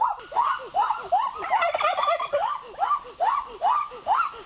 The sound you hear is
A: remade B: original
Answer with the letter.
A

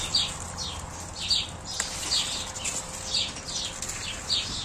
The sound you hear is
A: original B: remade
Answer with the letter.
A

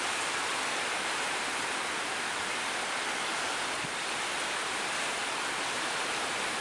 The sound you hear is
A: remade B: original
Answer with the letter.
A